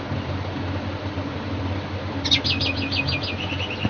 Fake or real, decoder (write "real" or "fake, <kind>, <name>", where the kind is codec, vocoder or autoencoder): real